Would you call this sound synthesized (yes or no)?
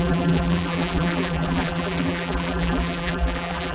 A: yes